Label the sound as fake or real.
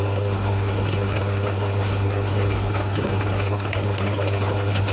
fake